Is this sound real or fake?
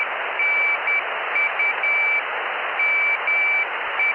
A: real